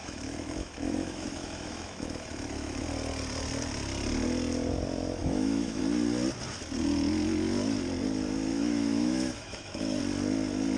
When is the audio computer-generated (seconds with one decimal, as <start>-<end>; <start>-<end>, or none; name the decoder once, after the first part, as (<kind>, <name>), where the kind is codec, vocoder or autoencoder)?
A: 0.0-2.8 (autoencoder, DAC-VAE); 5.2-5.8; 8.5-10.0